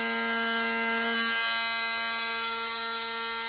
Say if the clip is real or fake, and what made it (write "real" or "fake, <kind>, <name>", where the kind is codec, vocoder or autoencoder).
real